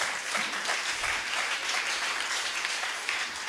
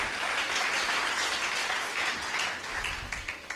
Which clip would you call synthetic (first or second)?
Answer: first